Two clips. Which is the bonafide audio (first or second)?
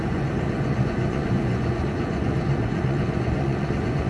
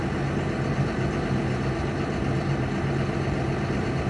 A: second